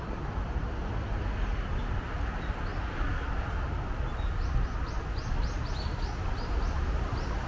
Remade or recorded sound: recorded